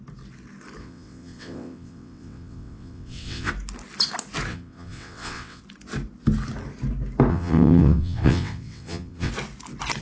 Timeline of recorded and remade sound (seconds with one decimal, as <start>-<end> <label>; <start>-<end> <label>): 0.0-0.8 recorded; 0.8-3.5 remade; 3.5-4.5 recorded; 4.5-5.6 remade; 5.6-7.3 recorded; 7.3-9.3 remade; 9.3-10.0 recorded